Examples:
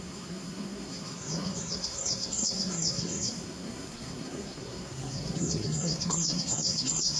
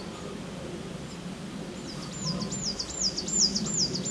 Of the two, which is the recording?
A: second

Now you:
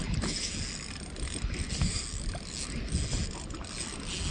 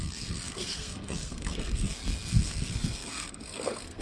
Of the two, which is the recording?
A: first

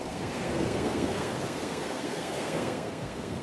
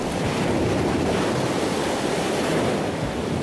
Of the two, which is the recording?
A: second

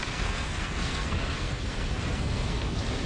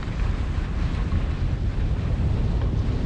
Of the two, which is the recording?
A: second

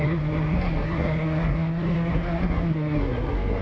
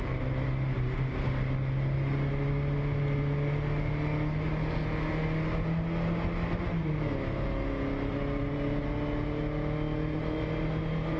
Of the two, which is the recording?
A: second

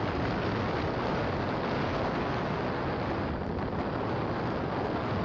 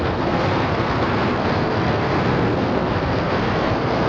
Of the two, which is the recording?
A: first